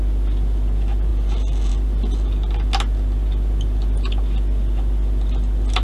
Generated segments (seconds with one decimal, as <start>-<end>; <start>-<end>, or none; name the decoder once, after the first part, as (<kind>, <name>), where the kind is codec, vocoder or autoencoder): none